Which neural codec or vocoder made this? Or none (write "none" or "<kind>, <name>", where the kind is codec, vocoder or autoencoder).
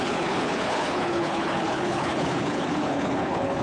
codec, HILCodec